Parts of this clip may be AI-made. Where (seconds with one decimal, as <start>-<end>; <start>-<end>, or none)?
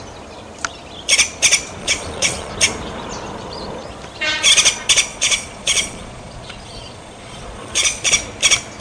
1.8-2.5; 5.1-8.1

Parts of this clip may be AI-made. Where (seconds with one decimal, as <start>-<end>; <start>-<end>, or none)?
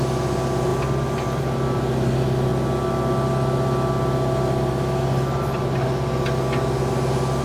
none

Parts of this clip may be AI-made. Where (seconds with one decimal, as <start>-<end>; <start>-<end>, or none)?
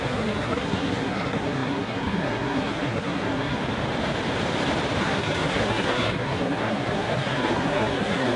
0.0-3.6; 5.0-8.4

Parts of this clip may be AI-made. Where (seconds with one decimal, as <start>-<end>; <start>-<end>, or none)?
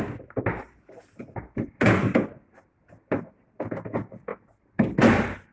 none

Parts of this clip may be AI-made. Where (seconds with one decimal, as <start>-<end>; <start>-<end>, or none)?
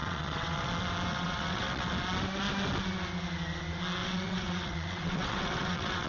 0.0-0.7; 1.1-1.9; 4.0-6.1